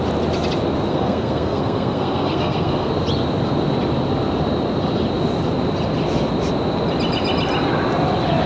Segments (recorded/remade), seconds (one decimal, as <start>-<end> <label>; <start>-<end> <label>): 0.0-0.9 recorded; 0.9-2.9 remade; 2.9-8.5 recorded